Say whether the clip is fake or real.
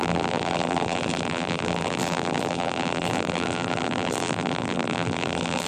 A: fake